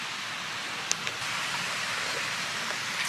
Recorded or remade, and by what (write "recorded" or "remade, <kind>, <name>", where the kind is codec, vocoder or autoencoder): recorded